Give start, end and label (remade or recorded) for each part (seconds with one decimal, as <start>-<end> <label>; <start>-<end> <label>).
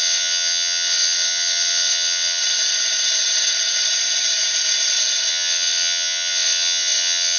0.0-2.4 remade; 2.4-5.3 recorded; 5.3-7.4 remade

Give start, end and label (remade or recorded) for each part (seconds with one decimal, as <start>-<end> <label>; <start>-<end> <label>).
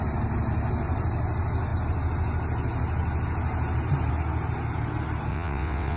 0.0-5.3 recorded; 5.3-6.0 remade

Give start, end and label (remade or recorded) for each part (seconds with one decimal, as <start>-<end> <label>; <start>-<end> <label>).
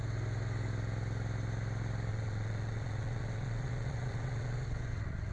0.0-2.1 recorded; 2.1-5.3 remade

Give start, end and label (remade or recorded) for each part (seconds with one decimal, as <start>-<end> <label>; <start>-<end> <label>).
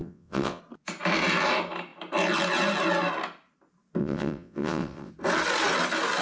0.0-0.6 remade; 0.6-4.0 recorded; 4.0-5.1 remade; 5.1-6.2 recorded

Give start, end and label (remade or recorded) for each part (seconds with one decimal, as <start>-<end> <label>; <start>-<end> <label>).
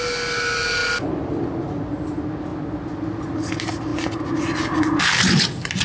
0.0-5.8 recorded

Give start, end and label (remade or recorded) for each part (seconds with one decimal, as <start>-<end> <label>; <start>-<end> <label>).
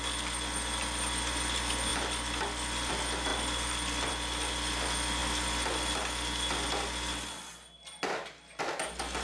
0.0-9.2 recorded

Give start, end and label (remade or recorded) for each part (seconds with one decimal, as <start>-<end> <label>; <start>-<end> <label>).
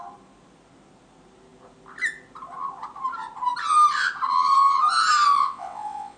0.0-5.4 recorded; 5.4-6.2 remade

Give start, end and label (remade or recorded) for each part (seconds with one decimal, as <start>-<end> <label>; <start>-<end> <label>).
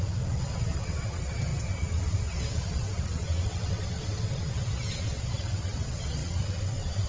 0.0-7.1 remade